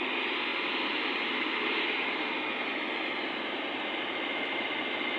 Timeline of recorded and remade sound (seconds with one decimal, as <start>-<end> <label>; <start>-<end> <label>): 0.0-5.2 recorded